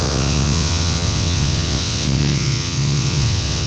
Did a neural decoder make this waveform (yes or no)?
yes